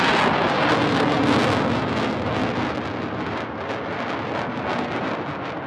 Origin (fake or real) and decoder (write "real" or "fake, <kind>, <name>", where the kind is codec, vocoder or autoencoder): real